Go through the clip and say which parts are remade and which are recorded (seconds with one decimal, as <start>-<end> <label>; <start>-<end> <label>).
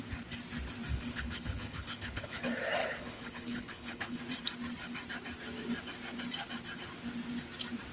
0.0-0.9 recorded; 0.9-2.4 remade; 2.4-2.8 recorded; 2.8-4.2 remade; 4.2-7.9 recorded